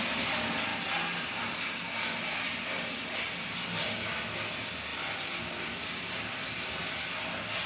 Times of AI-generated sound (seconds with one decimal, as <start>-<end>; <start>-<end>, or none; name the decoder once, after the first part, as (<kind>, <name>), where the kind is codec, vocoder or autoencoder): 0.7-1.6 (vocoder, BigVGAN v2)